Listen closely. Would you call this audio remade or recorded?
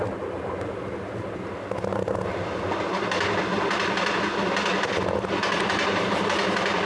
recorded